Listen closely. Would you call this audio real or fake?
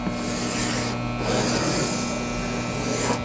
real